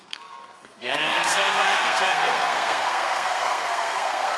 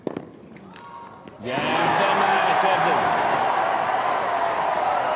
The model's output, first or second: first